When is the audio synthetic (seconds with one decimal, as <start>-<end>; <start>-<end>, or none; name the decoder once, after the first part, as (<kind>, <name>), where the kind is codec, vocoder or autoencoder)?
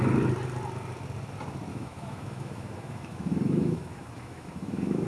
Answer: 1.7-5.1 (autoencoder, DAC-VAE)